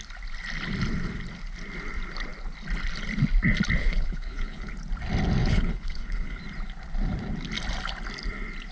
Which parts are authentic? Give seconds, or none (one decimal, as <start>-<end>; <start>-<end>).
0.0-3.8; 4.7-5.4; 6.4-8.7